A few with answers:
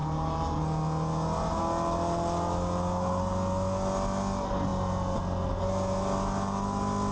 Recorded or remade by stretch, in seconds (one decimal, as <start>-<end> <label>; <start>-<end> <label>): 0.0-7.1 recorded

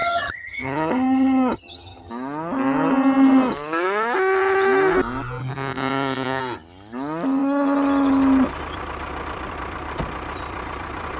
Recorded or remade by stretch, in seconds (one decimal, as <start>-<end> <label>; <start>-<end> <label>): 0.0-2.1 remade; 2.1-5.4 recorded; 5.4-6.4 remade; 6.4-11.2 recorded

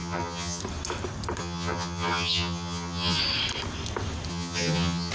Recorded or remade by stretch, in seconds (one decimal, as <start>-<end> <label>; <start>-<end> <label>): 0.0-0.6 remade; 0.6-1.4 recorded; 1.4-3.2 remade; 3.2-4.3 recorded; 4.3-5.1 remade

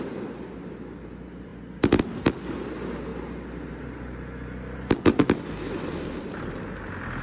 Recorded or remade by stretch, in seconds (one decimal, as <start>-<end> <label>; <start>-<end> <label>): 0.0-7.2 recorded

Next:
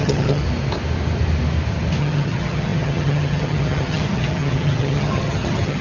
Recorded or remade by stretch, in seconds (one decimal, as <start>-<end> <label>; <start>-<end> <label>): 0.0-0.4 remade; 0.4-2.0 recorded; 2.0-5.8 remade